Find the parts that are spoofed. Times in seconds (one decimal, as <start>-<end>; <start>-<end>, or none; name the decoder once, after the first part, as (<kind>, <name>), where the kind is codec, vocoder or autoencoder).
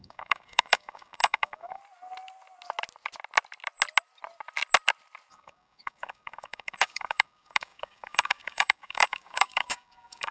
0.0-1.8 (codec, DAC); 5.3-10.3